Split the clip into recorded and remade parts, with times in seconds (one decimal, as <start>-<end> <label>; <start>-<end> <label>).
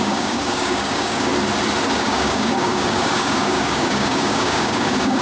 0.0-1.3 remade; 1.3-1.9 recorded; 1.9-5.2 remade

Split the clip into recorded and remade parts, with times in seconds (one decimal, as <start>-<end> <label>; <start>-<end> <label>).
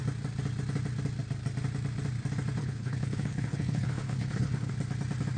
0.0-2.6 recorded; 2.6-4.7 remade; 4.7-5.4 recorded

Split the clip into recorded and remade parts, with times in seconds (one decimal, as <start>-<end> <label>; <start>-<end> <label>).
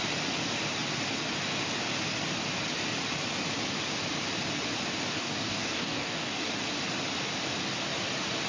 0.0-5.2 recorded; 5.2-6.5 remade; 6.5-8.5 recorded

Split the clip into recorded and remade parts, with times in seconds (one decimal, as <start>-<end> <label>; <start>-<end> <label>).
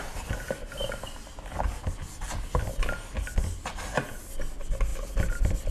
0.0-5.7 recorded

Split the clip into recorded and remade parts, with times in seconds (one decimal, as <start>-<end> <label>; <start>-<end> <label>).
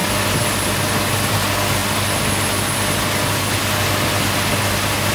0.0-5.1 recorded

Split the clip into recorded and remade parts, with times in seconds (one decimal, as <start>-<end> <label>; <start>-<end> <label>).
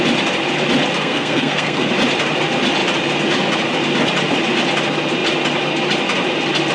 0.0-0.9 recorded; 0.9-1.9 remade; 1.9-6.7 recorded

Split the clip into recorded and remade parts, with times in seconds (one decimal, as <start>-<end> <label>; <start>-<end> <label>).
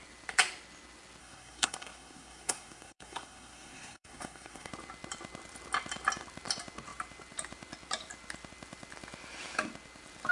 0.0-1.2 recorded; 1.2-4.7 remade; 4.7-10.3 recorded